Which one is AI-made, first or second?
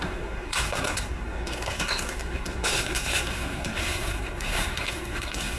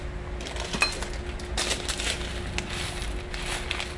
first